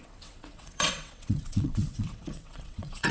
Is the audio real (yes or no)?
no